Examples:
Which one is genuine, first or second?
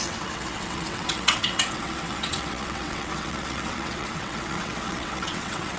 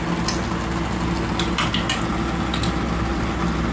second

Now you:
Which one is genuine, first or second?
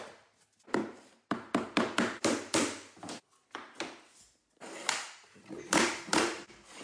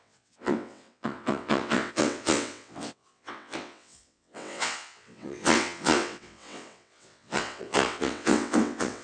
first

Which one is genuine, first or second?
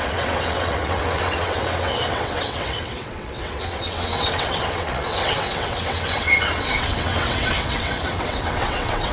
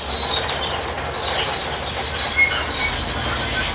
second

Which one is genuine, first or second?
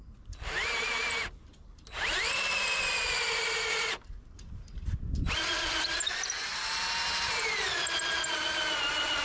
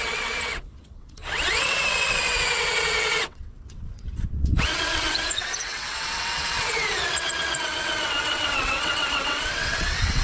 first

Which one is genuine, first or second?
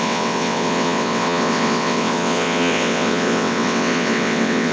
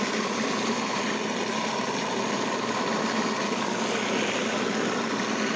second